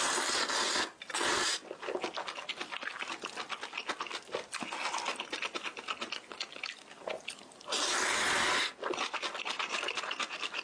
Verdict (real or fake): real